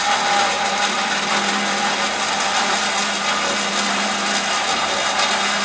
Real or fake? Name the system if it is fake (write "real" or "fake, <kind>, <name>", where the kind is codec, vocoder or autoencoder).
real